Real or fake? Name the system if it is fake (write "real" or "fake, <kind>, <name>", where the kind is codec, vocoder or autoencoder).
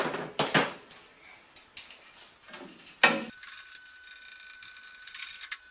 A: real